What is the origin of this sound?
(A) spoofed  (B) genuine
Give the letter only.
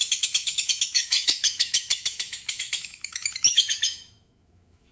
A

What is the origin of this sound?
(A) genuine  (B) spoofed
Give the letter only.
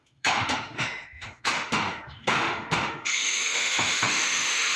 B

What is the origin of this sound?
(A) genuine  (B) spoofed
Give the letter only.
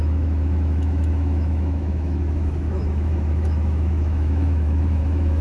B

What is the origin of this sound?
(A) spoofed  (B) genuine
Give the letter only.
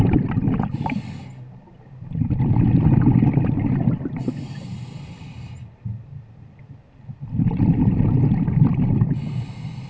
B